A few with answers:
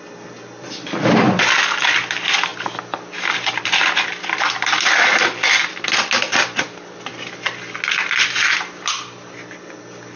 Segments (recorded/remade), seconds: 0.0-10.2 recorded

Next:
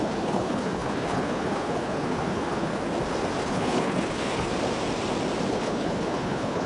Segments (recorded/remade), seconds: 0.0-2.7 remade; 2.7-3.4 recorded; 3.4-4.5 remade; 4.5-5.5 recorded; 5.5-6.7 remade

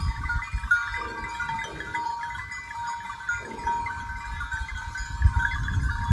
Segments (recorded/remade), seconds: 0.0-6.1 recorded

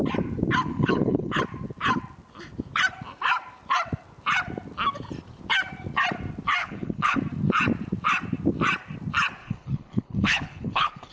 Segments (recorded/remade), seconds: 0.0-0.6 recorded; 0.6-1.4 remade; 1.4-6.6 recorded; 6.6-7.2 remade; 7.2-9.4 recorded; 9.4-11.1 remade